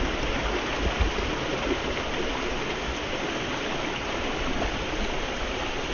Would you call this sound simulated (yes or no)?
no